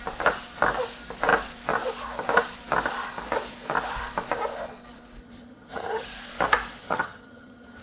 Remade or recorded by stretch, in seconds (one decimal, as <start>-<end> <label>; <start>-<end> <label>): 0.0-5.2 recorded; 5.2-6.0 remade; 6.0-6.8 recorded; 6.8-7.8 remade